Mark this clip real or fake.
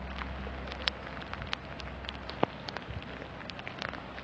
real